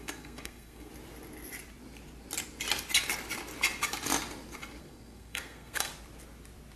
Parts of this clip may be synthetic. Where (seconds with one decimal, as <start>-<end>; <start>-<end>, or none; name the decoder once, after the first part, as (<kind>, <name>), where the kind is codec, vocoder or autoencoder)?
0.0-0.9 (codec, SNAC); 4.8-5.9